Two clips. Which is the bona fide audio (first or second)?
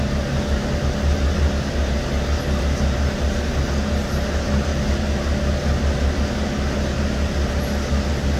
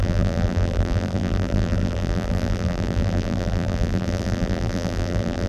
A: first